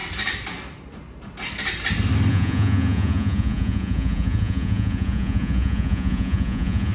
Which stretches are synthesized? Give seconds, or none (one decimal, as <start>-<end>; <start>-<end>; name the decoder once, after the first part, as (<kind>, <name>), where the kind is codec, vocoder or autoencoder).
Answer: 2.3-6.9 (vocoder, Vocos)